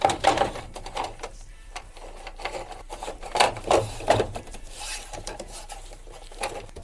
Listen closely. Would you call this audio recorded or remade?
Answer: remade